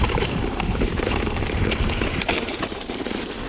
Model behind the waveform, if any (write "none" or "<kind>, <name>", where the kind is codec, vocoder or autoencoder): vocoder, BigVGAN v2